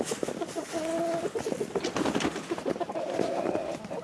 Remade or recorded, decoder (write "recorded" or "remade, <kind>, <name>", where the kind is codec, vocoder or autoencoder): recorded